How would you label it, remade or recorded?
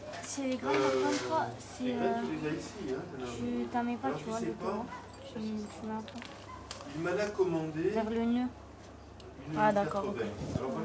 recorded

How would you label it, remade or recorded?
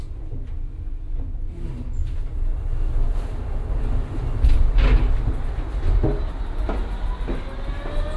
recorded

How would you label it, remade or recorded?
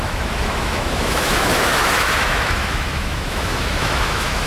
remade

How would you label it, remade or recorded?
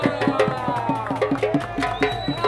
recorded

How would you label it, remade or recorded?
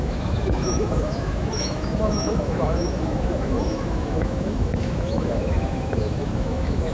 remade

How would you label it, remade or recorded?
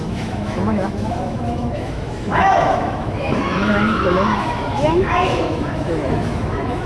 remade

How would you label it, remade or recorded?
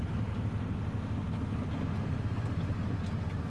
recorded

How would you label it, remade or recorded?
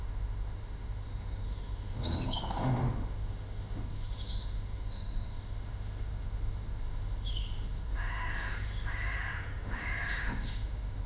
remade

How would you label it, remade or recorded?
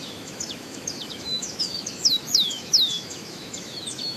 remade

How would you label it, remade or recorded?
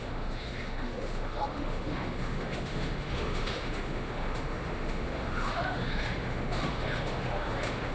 remade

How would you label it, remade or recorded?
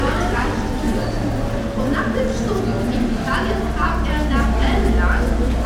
recorded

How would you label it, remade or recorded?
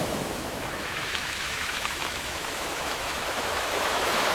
remade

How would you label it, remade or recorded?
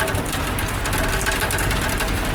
recorded